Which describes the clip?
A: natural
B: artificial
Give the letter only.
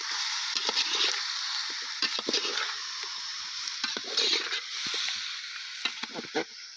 A